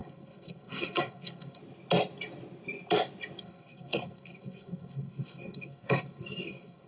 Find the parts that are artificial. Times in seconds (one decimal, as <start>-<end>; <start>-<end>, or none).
0.0-1.6; 3.4-6.9